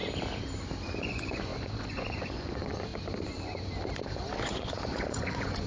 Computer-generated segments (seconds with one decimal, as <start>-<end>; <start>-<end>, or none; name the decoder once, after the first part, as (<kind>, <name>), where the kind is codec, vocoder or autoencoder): 1.0-2.9 (vocoder, Vocos); 4.4-5.7